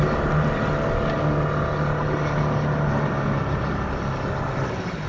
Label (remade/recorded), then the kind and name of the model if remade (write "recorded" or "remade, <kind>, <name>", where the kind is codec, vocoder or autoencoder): recorded